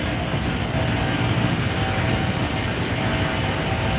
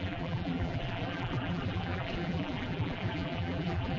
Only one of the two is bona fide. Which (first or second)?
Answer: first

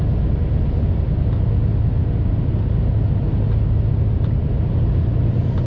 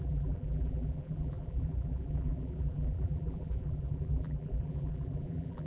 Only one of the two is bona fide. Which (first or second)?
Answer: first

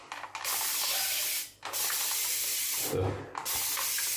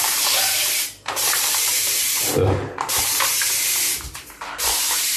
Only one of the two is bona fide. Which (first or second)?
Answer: first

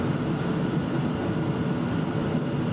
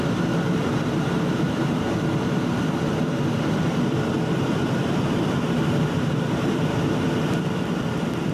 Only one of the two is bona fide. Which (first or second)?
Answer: first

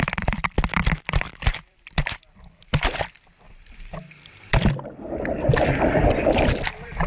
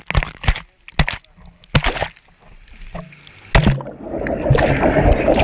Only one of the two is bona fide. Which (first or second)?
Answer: second